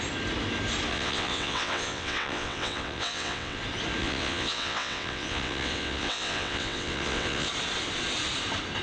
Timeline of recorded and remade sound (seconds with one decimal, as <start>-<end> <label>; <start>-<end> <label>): 0.0-0.9 recorded; 0.9-3.6 remade; 3.6-4.0 recorded; 4.0-7.5 remade; 7.5-8.8 recorded